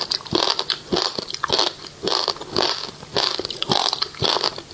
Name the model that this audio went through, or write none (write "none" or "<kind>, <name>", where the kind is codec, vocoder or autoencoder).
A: none